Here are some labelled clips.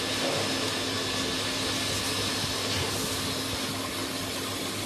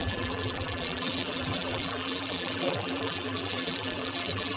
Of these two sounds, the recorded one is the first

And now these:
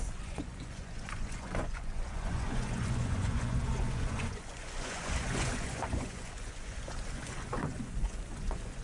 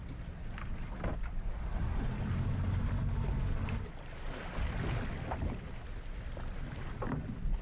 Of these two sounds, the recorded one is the second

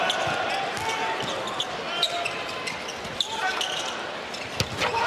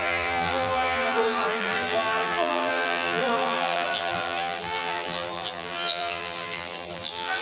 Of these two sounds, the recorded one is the first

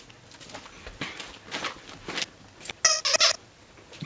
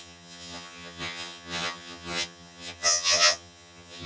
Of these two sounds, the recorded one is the first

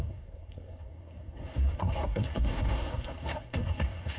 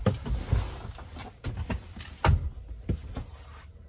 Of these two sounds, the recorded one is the second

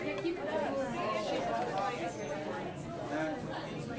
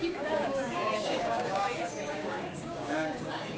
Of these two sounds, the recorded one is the first